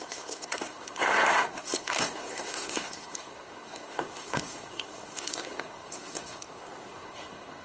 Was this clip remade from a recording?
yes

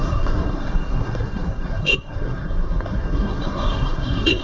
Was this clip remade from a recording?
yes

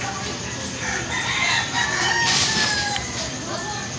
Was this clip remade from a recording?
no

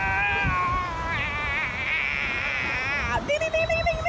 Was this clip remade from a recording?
no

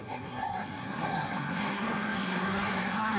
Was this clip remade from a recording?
yes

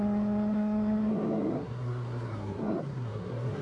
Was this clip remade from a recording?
yes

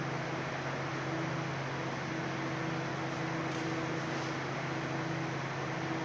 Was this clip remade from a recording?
no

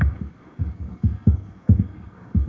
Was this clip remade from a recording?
yes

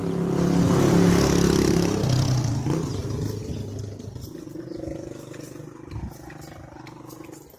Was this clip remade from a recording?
no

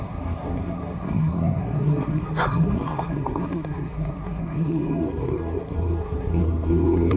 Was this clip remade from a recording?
yes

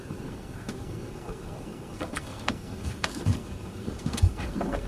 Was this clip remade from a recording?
yes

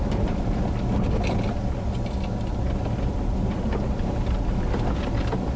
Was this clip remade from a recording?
no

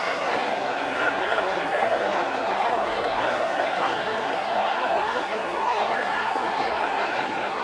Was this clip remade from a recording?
yes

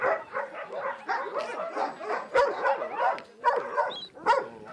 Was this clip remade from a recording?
no